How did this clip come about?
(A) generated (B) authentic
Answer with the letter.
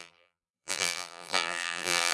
A